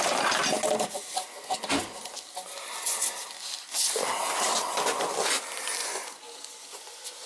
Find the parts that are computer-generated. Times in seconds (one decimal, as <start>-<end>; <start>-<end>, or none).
5.8-7.3